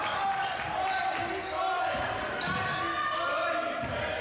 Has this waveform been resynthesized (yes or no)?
no